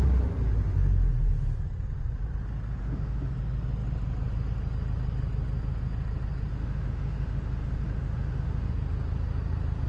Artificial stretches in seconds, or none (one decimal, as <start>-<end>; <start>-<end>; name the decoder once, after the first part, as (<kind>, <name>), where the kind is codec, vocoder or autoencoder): 2.8-3.3 (autoencoder, DAC-VAE); 6.5-8.7